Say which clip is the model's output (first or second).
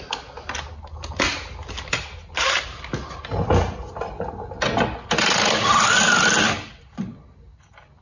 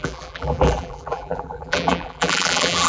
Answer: second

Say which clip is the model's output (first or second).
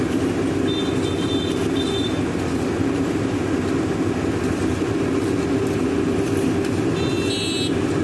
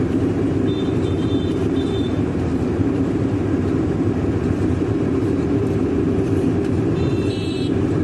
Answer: second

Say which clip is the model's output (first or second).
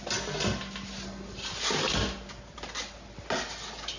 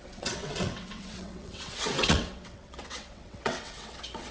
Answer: second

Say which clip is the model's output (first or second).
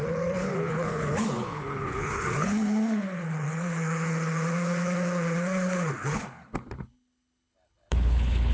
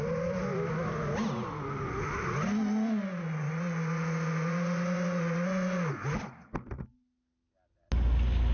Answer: first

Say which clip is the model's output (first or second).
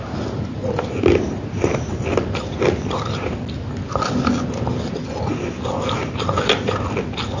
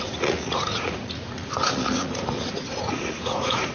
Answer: second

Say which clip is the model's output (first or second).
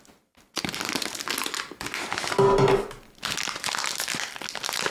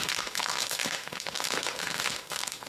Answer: second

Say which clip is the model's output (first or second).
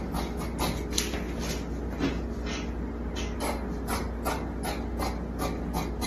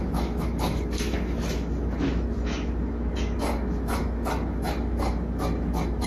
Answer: second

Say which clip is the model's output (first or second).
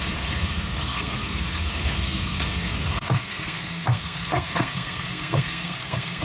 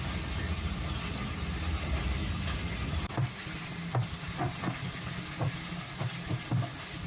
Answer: first